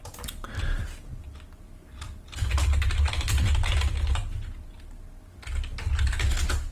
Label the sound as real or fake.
real